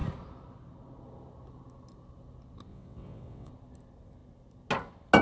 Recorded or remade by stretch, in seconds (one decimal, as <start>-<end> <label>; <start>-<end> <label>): 0.0-2.7 recorded; 2.7-3.5 remade; 3.5-5.2 recorded